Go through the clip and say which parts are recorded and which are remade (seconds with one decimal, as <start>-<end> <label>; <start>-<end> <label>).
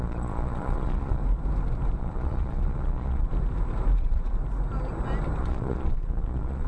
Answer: 0.0-1.2 remade; 1.2-2.0 recorded; 2.0-3.3 remade; 3.3-4.0 recorded; 4.0-4.4 remade; 4.4-5.4 recorded; 5.4-6.7 remade